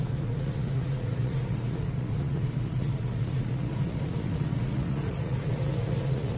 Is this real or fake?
fake